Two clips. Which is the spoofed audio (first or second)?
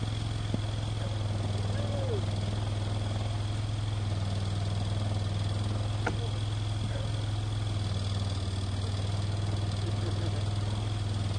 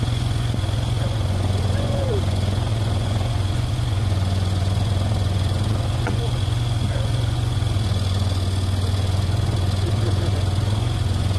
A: second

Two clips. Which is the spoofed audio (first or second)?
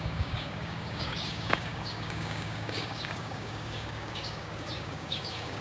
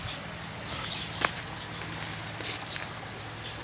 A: first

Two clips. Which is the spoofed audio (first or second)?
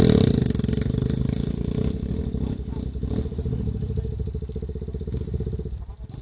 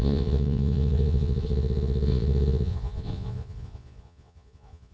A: second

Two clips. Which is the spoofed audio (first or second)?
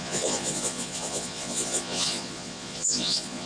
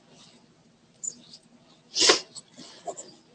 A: first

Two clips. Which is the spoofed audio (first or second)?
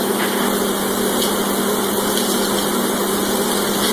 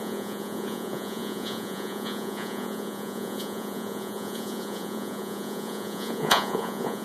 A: second